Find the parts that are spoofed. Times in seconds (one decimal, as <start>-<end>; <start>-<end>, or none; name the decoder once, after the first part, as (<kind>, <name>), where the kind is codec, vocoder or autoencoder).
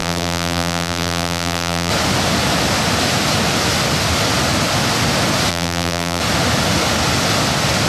0.0-1.9 (vocoder, BigVGAN v2); 5.5-6.2